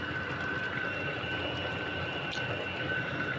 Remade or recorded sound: recorded